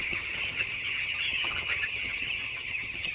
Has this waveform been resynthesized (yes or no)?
yes